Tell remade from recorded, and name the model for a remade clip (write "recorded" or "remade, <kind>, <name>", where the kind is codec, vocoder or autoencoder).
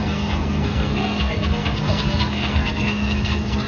remade, codec, SNAC